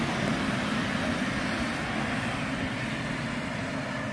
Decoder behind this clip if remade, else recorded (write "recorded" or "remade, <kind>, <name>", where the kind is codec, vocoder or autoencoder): recorded